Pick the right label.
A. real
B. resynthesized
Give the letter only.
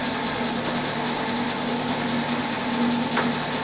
A